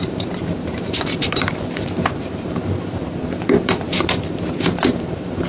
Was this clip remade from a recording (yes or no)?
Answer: yes